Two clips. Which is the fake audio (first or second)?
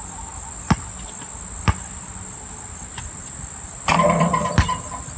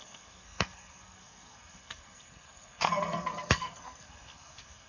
second